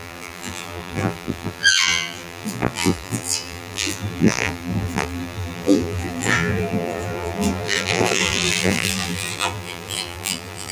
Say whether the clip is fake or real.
fake